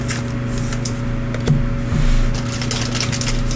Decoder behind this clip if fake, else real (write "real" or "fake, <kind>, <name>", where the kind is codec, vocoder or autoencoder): real